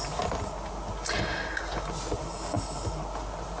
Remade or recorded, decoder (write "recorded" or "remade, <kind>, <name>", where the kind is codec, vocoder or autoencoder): recorded